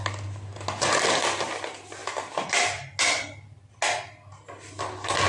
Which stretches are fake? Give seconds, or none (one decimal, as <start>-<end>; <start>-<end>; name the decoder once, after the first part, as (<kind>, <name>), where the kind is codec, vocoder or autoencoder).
none